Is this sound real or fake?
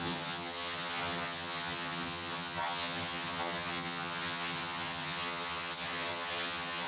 fake